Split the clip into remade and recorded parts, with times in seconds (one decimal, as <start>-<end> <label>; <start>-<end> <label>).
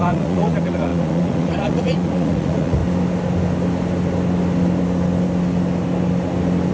0.0-2.8 remade; 2.8-6.7 recorded